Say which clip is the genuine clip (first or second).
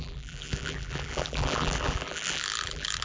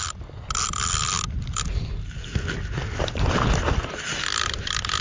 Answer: second